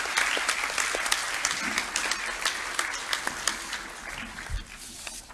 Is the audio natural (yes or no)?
yes